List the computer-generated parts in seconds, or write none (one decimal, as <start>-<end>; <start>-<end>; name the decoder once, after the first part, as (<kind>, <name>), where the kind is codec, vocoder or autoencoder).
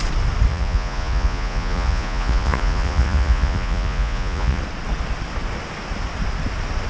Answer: 0.5-4.6 (vocoder, Vocos)